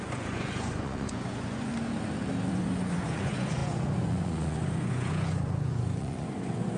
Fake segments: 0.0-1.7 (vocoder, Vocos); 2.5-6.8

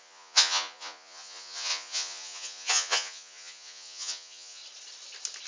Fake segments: 0.0-4.6 (vocoder, Vocos)

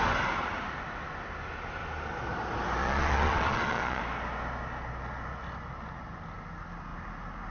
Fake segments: 2.8-4.0 (vocoder, Vocos)

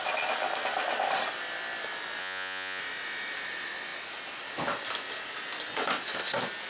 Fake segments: 2.2-2.8 (vocoder, Vocos)

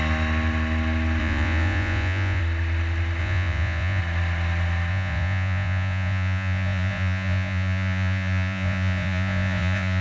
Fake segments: 1.2-2.4 (vocoder, Vocos); 3.2-4.0; 4.9-10.0

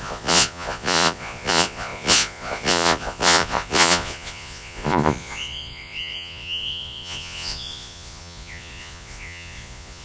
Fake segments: 0.0-10.0 (vocoder, Vocos)

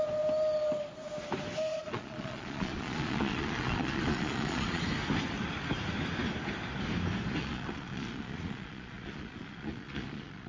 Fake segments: 1.7-4.8 (vocoder, Vocos); 7.4-10.5